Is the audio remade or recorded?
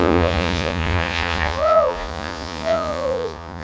remade